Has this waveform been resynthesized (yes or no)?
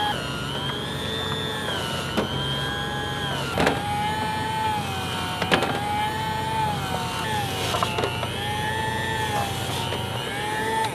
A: no